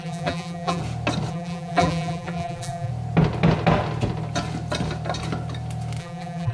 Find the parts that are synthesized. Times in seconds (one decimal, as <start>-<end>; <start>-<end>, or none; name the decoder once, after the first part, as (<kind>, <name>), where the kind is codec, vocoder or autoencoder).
0.0-0.8 (vocoder, BigVGAN v2); 1.3-2.9; 6.0-6.5